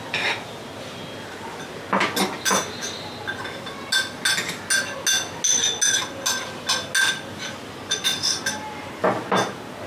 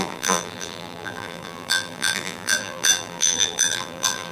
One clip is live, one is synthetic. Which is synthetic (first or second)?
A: second